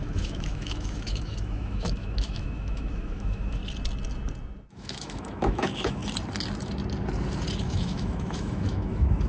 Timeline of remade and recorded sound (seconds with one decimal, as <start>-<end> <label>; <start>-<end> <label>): 0.0-3.6 remade; 3.6-4.7 recorded; 4.7-6.0 remade; 6.0-7.6 recorded; 7.6-9.3 remade